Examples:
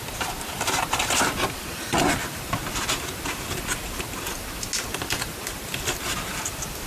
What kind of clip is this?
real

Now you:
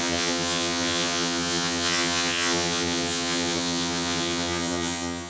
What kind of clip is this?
fake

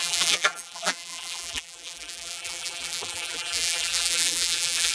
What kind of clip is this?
fake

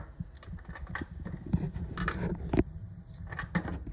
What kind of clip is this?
real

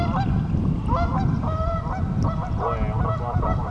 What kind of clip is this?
real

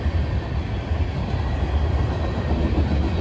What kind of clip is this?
real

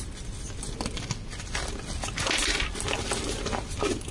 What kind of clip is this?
real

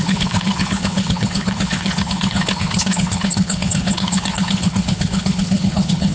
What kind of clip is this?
fake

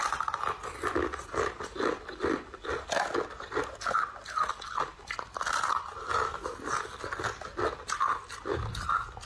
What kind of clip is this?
real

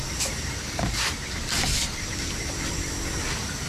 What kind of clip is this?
real